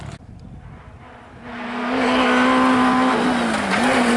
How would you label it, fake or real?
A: real